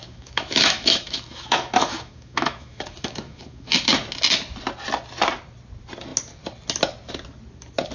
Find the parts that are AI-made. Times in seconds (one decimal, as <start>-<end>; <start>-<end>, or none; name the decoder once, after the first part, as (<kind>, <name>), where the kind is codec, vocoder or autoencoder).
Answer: 0.0-3.9 (autoencoder, DAC-VAE)

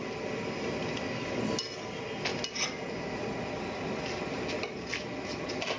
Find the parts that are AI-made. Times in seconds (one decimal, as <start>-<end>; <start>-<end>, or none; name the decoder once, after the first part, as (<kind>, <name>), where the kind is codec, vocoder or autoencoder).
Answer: none

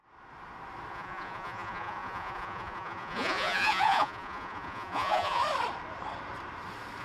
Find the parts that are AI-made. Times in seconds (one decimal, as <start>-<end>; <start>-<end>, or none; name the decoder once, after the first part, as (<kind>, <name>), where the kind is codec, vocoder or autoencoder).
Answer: 0.9-5.4 (vocoder, Vocos)

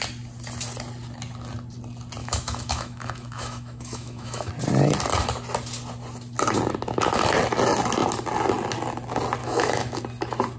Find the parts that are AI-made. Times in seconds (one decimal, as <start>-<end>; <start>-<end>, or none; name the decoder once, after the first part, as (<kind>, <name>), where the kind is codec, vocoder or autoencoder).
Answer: 2.2-4.5 (autoencoder, DAC-VAE); 9.4-10.0